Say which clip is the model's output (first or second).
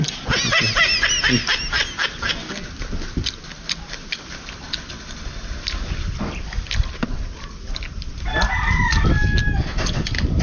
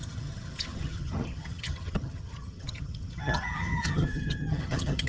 second